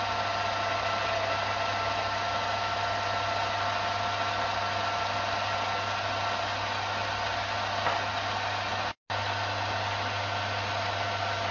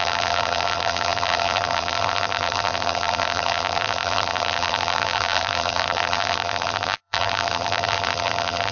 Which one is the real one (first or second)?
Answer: first